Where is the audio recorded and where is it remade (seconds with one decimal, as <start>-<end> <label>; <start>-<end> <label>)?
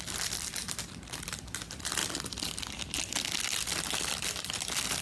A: 0.0-2.0 remade; 2.0-4.0 recorded; 4.0-5.0 remade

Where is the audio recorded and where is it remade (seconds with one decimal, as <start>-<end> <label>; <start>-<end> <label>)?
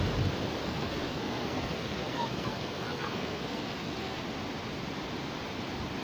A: 0.0-0.6 recorded; 0.6-4.2 remade; 4.2-6.0 recorded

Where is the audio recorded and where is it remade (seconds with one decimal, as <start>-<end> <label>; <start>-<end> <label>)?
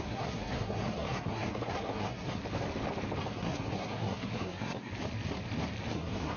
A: 0.0-2.4 remade; 2.4-3.3 recorded; 3.3-4.9 remade; 4.9-5.9 recorded; 5.9-6.4 remade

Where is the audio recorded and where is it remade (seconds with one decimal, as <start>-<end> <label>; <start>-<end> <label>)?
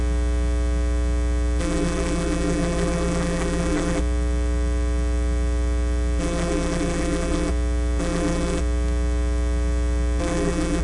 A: 0.0-1.6 recorded; 1.6-4.0 remade; 4.0-6.2 recorded; 6.2-7.5 remade; 7.5-8.0 recorded; 8.0-8.6 remade; 8.6-10.2 recorded; 10.2-10.8 remade